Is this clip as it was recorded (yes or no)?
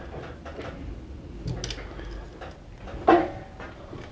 yes